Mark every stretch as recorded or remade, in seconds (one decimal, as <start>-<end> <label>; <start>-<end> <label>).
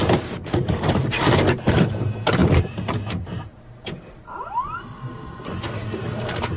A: 0.0-6.6 remade